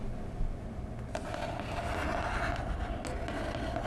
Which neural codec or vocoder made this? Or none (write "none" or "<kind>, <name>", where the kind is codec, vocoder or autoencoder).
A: none